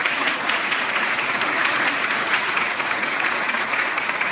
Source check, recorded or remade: remade